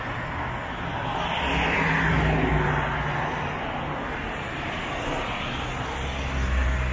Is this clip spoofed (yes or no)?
no